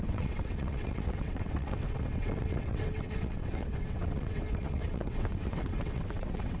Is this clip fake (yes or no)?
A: yes